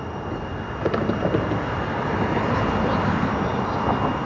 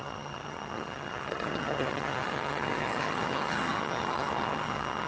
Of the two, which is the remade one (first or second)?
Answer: second